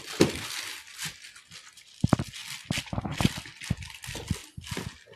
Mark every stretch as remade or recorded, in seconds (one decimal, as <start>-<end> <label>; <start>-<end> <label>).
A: 0.0-2.4 recorded; 2.4-3.0 remade; 3.0-5.2 recorded